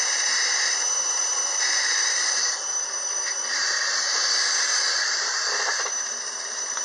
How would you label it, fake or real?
fake